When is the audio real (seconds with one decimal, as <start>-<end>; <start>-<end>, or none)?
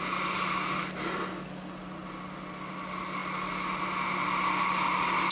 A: 0.0-5.3